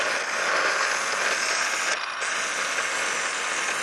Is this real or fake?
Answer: real